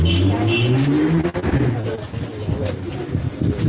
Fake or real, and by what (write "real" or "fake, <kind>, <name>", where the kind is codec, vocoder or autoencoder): real